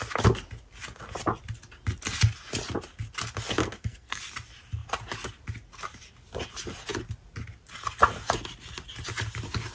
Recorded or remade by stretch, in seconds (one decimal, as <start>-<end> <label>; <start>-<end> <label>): 0.0-3.6 recorded; 3.6-4.2 remade; 4.2-9.7 recorded